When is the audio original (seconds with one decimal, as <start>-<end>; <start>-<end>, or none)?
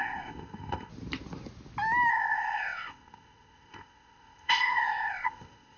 0.9-2.1